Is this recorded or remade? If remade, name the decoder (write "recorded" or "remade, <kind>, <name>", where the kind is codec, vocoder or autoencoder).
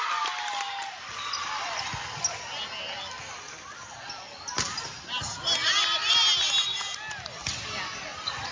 recorded